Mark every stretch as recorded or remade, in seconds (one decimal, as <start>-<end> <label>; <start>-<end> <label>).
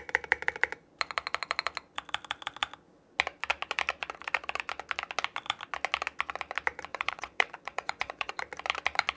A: 0.0-6.9 recorded; 6.9-8.3 remade; 8.3-9.2 recorded